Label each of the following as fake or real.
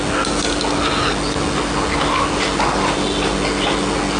real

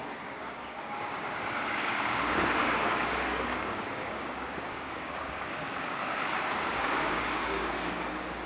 fake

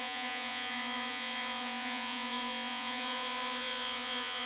fake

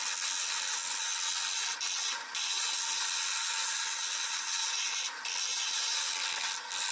real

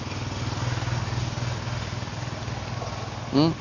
real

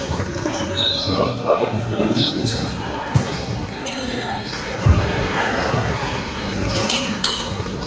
fake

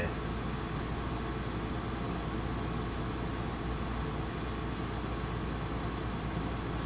real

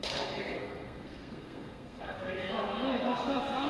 fake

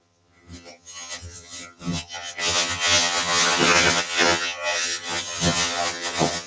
fake